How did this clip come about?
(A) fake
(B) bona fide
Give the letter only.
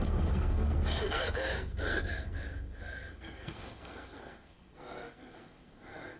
A